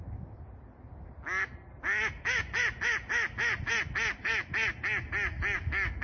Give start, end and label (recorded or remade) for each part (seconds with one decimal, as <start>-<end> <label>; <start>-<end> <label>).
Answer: 0.0-6.0 recorded